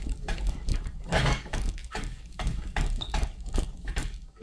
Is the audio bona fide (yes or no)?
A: no